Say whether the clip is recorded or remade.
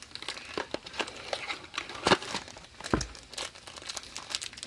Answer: recorded